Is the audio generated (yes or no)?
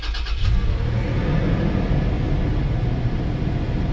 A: no